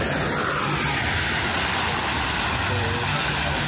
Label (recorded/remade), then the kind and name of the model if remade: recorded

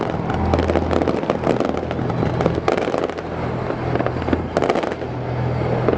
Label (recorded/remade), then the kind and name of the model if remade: recorded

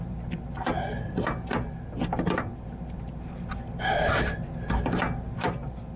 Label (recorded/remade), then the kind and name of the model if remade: recorded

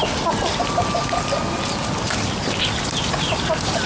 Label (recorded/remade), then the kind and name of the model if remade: recorded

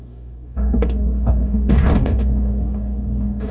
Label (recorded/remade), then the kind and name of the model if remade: remade, codec, DAC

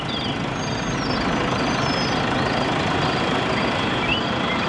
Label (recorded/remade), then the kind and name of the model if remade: recorded